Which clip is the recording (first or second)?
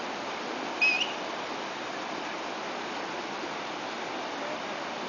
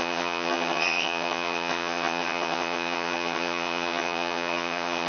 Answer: first